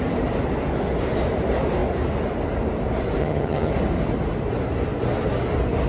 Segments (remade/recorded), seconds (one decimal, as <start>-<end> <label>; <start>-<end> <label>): 0.0-3.2 recorded; 3.2-3.7 remade; 3.7-5.9 recorded